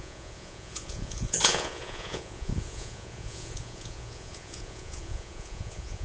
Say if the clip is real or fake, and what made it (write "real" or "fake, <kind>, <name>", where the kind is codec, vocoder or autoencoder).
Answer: fake, vocoder, Vocos